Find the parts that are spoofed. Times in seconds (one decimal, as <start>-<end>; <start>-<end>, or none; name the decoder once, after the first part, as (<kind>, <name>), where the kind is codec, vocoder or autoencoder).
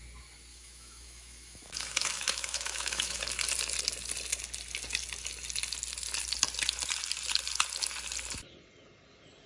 0.5-3.2 (autoencoder, DAC-VAE)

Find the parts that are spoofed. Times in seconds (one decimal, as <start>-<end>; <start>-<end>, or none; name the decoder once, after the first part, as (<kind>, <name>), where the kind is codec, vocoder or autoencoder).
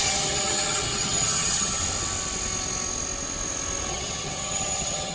0.0-1.8 (vocoder, HiFi-GAN); 3.9-5.1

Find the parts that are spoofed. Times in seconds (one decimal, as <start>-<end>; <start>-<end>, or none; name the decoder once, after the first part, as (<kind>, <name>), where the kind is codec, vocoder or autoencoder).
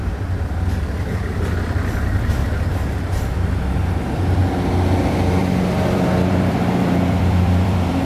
0.0-2.4 (vocoder, BigVGAN v2); 4.0-4.4; 5.4-8.0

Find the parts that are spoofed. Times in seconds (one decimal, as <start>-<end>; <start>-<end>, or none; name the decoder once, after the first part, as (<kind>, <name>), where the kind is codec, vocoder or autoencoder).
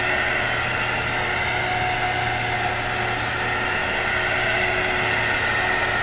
none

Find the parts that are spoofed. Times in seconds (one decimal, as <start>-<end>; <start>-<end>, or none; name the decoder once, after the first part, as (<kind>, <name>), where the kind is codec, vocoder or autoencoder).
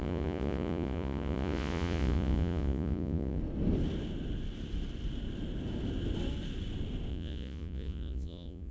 0.0-3.4 (vocoder, Vocos); 7.1-8.7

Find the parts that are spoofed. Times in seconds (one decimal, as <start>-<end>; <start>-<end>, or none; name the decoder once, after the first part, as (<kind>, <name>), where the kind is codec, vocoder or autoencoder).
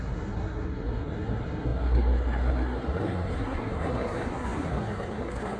0.0-5.6 (codec, SNAC)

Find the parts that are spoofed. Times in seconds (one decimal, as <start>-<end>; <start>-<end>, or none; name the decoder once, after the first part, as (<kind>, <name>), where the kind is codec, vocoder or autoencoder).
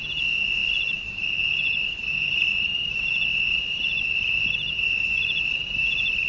0.0-6.3 (vocoder, BigVGAN v2)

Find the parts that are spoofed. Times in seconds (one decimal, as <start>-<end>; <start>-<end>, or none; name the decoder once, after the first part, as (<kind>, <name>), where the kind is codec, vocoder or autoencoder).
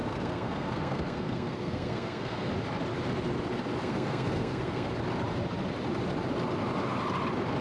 0.0-2.5 (codec, SNAC); 3.8-4.9